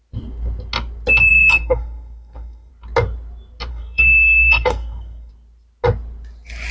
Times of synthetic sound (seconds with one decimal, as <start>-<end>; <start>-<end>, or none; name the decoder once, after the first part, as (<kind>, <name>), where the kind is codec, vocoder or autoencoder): 1.3-2.7 (codec, SNAC); 3.7-5.3